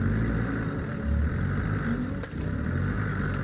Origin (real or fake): real